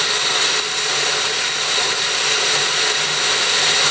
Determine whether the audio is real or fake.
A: real